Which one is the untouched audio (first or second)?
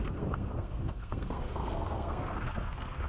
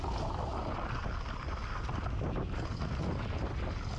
second